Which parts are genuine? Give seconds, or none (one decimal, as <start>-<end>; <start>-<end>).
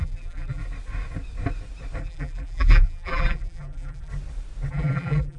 0.6-2.0; 4.1-4.7